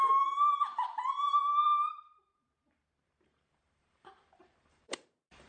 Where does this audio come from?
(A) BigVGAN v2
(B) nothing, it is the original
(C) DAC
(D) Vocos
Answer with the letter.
A